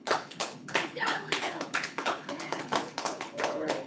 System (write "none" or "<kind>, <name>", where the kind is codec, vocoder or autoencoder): codec, HILCodec